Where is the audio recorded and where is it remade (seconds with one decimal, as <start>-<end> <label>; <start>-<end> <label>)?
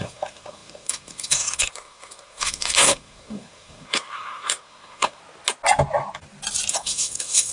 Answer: 0.0-5.2 remade; 5.2-6.7 recorded; 6.7-7.5 remade